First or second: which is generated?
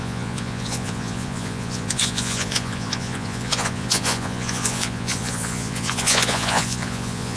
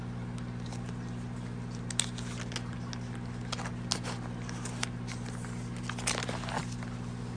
first